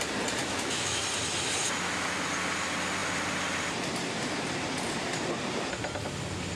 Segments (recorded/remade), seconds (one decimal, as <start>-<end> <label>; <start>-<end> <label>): 0.0-0.4 recorded; 0.4-1.0 remade; 1.0-6.6 recorded